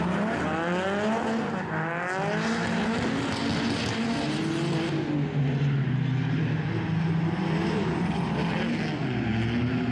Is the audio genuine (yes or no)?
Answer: yes